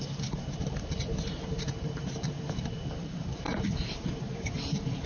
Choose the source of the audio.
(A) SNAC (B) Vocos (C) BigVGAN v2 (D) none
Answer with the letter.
C